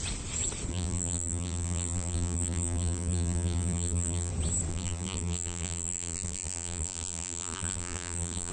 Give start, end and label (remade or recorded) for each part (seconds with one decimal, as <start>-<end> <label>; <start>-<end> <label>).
0.0-0.7 recorded; 0.7-4.3 remade; 4.3-4.7 recorded; 4.7-8.5 remade